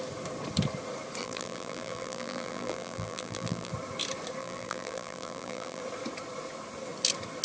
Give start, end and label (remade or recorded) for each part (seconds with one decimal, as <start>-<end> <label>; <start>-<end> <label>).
0.0-1.2 recorded; 1.2-3.7 remade; 3.7-4.4 recorded; 4.4-5.8 remade; 5.8-7.4 recorded